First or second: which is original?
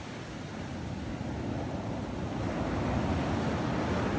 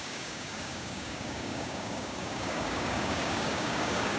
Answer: first